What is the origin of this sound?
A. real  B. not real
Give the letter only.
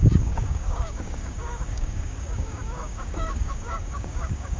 B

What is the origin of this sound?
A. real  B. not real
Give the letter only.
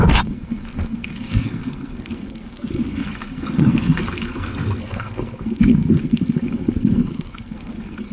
B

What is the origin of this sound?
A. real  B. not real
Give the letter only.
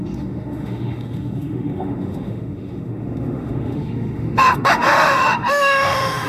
B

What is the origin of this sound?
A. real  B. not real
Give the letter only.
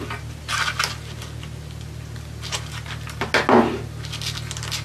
A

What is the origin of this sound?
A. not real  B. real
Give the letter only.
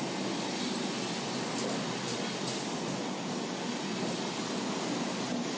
B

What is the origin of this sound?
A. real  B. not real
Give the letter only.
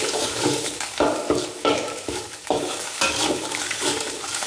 B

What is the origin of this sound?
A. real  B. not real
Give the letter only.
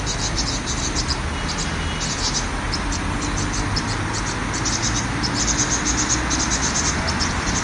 A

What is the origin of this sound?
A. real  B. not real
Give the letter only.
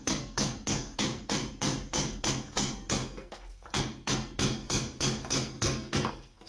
B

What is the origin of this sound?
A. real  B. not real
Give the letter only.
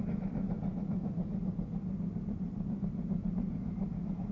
A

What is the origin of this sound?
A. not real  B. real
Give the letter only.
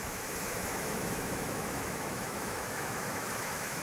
A